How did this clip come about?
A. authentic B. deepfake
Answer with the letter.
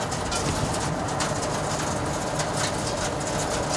A